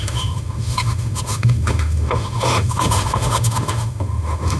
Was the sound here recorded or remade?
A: remade